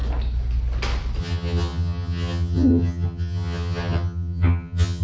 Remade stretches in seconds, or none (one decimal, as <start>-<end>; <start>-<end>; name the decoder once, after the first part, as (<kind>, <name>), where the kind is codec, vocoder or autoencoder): 1.2-5.0 (vocoder, HiFi-GAN)